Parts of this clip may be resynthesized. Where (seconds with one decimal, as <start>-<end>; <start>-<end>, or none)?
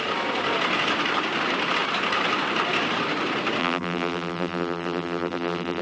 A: 3.6-5.8